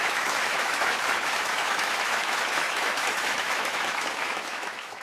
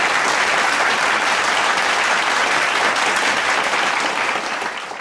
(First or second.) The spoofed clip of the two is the first